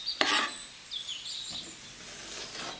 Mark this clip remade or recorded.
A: recorded